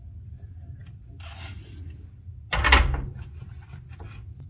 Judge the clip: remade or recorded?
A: recorded